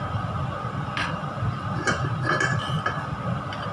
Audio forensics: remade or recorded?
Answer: recorded